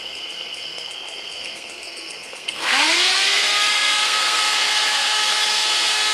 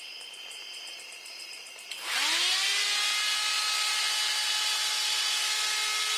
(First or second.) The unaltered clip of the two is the second